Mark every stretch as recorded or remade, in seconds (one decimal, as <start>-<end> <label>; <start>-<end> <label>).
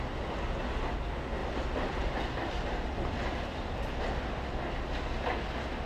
0.0-1.4 recorded; 1.4-4.0 remade; 4.0-5.9 recorded